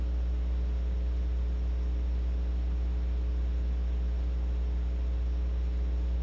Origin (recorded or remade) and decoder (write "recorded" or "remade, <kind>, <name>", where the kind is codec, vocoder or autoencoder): recorded